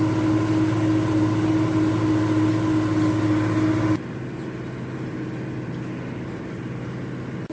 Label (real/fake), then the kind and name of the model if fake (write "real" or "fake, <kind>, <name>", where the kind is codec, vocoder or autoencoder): real